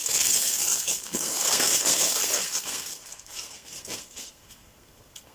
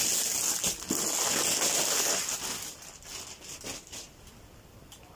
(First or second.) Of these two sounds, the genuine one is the second